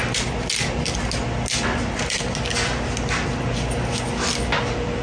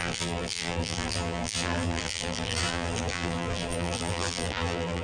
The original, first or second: first